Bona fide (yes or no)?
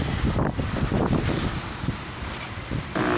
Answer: yes